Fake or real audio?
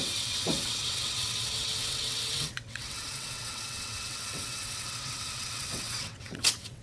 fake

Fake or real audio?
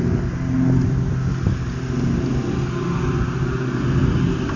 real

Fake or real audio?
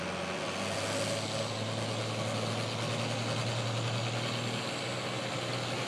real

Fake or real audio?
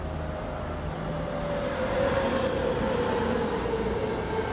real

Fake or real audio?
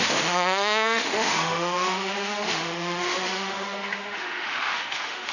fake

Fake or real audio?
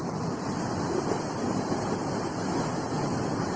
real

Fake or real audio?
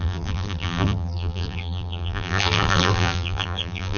fake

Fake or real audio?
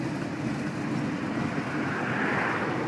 real